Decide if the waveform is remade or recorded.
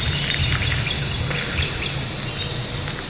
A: recorded